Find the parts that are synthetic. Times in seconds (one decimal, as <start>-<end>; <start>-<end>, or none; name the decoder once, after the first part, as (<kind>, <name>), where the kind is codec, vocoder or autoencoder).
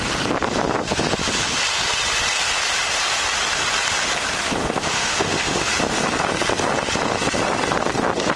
4.6-5.7 (autoencoder, DAC-VAE)